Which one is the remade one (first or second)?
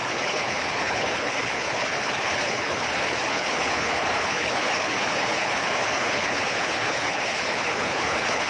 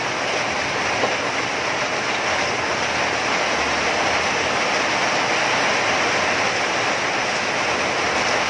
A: first